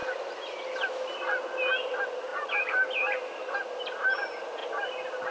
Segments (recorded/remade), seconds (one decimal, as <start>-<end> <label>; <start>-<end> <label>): 0.0-5.3 recorded